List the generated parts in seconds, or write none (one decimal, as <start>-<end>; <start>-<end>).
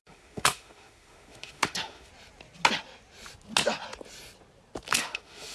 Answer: 0.0-2.1; 4.9-5.5